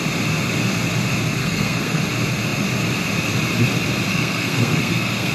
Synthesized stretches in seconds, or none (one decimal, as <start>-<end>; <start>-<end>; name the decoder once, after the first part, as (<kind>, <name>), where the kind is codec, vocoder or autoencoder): 1.4-2.0 (codec, SNAC); 4.1-5.3